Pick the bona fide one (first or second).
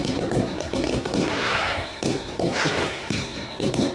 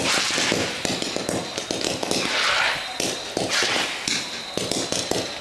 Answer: second